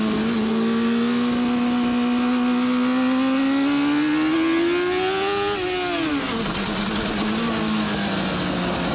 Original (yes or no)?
yes